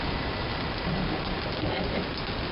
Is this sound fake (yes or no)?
no